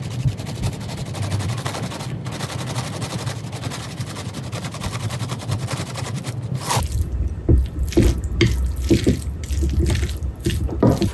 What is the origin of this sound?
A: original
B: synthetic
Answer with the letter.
A